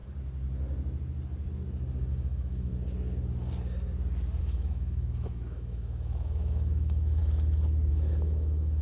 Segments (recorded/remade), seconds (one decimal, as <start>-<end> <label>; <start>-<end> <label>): 0.0-2.1 recorded; 2.1-2.7 remade; 2.7-4.4 recorded; 4.4-7.2 remade; 7.2-7.9 recorded; 7.9-8.8 remade